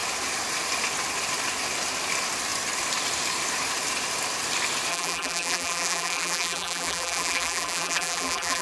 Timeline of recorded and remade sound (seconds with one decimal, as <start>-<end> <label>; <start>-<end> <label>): 0.0-4.9 recorded; 4.9-8.6 remade